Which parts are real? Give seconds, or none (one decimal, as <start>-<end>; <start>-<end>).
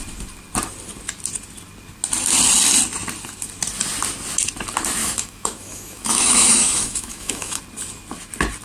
0.0-5.0; 7.6-8.6